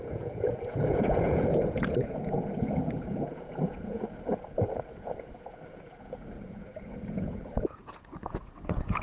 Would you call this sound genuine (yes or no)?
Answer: no